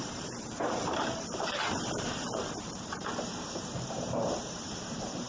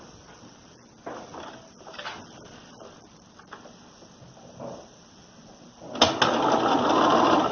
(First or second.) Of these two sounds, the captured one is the second